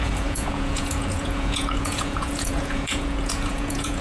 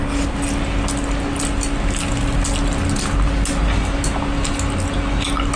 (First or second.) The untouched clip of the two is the second